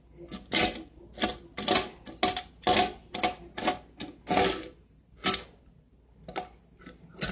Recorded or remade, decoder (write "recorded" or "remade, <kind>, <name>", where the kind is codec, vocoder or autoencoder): recorded